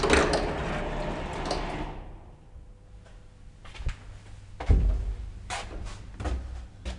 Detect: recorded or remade recorded